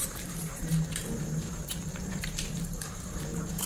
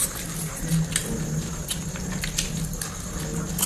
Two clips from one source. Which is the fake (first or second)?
first